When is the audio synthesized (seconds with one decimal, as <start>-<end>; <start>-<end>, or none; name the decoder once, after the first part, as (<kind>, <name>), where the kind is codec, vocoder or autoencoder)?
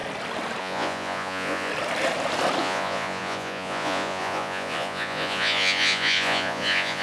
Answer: 0.6-1.7 (vocoder, Vocos); 2.6-7.0